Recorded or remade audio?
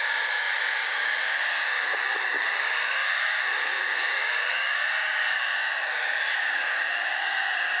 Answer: remade